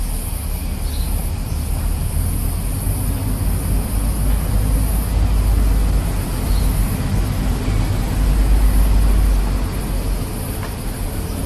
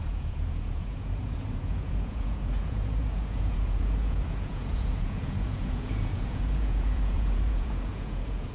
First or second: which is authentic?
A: first